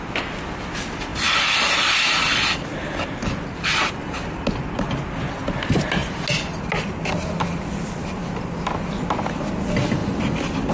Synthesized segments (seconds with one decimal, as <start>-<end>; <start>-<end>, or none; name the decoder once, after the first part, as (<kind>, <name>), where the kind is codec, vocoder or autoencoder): none